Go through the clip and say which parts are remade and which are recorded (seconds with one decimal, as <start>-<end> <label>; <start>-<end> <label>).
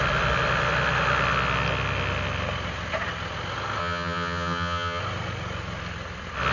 0.0-3.8 recorded; 3.8-5.0 remade; 5.0-6.5 recorded